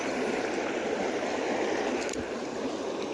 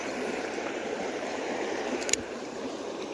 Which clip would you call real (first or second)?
first